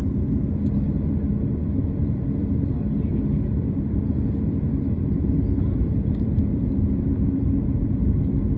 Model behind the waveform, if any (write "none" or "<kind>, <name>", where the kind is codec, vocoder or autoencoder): vocoder, BigVGAN v2